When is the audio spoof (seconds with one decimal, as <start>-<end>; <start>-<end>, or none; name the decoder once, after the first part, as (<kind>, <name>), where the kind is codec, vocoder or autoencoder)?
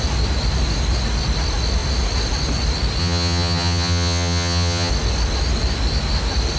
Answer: 3.0-4.9 (vocoder, HiFi-GAN)